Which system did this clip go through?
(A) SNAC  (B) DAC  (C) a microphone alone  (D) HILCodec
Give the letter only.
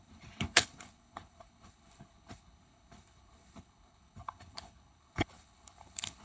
D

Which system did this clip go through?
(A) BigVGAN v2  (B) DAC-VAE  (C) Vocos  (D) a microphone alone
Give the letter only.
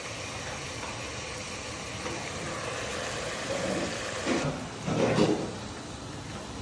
D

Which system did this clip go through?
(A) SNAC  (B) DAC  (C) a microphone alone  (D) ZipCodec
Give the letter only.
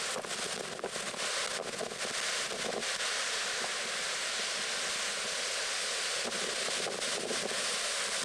C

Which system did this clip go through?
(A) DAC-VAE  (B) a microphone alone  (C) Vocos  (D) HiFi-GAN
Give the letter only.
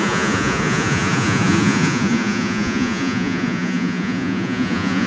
C